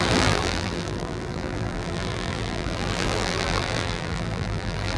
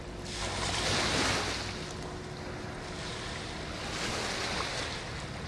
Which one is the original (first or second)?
second